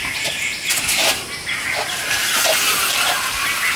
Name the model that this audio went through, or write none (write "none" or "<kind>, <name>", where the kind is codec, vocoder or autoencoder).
none